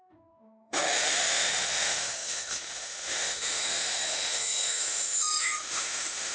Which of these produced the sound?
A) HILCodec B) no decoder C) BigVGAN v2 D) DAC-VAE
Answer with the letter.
D